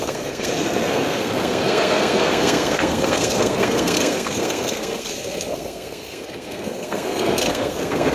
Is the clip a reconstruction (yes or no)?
yes